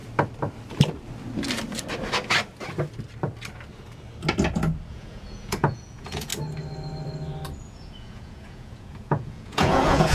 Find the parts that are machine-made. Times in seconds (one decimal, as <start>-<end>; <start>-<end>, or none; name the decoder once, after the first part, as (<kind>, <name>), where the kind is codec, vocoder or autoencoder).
4.9-6.3 (vocoder, Vocos); 7.6-10.1